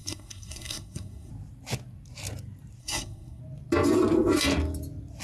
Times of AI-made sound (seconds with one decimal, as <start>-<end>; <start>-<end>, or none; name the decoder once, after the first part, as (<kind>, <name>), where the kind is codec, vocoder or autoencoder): 0.0-1.3 (codec, SNAC); 2.8-3.4